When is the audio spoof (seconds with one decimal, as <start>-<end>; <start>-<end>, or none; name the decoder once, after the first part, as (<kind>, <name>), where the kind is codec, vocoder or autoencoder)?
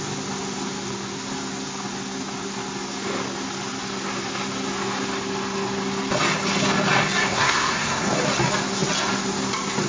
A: 7.3-8.1 (codec, SNAC)